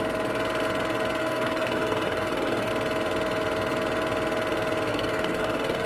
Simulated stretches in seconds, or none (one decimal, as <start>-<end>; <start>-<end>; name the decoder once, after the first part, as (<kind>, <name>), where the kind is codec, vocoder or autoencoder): 1.2-2.7 (codec, SNAC); 4.9-5.9

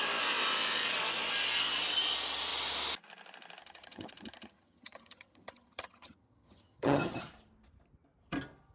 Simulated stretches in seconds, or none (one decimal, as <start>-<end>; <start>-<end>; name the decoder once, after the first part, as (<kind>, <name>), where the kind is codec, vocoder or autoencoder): 3.6-7.3 (vocoder, HiFi-GAN)

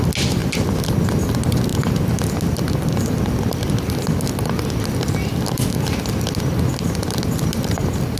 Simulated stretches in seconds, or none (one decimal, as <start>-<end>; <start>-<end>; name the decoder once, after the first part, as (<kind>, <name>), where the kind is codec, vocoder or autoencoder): 5.3-6.0 (vocoder, BigVGAN v2)

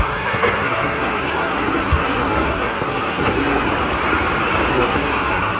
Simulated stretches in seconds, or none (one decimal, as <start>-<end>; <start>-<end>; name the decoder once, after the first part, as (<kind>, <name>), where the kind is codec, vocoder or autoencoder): 0.0-3.7 (codec, SNAC); 4.7-5.6

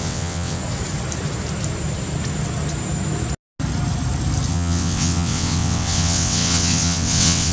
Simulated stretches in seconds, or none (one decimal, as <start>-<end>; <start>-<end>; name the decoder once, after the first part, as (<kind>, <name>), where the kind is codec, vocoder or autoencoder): 0.0-0.6 (vocoder, WaveNeXt); 4.5-7.5